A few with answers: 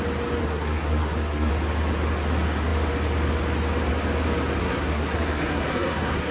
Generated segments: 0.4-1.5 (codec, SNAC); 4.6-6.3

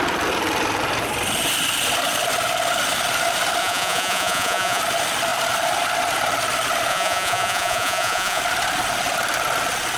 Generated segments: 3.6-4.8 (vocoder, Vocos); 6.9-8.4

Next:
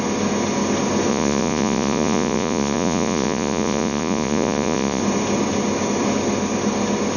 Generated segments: 1.1-5.0 (vocoder, Vocos)